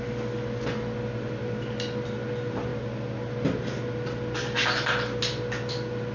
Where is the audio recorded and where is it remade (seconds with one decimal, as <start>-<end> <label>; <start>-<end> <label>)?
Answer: 0.0-6.1 recorded